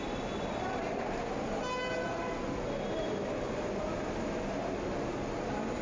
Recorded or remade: recorded